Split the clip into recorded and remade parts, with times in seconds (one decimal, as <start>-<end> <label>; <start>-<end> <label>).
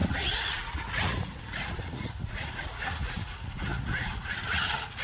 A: 0.0-5.0 remade